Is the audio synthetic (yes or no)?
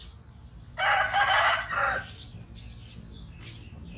no